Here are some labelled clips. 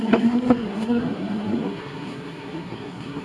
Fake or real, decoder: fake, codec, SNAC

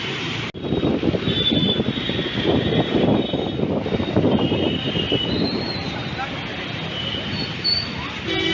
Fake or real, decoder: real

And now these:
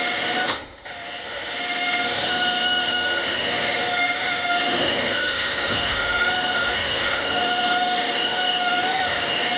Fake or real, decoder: fake, autoencoder, DAC-VAE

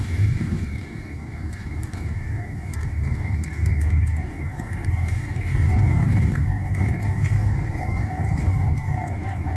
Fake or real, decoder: fake, codec, DAC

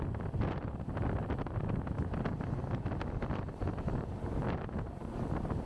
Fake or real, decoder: real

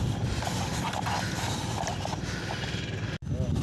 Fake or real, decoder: real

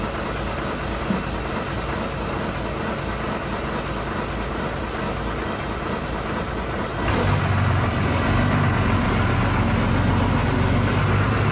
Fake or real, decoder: real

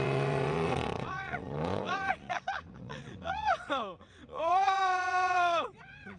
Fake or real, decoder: fake, vocoder, WaveNeXt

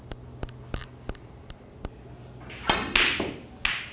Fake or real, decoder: real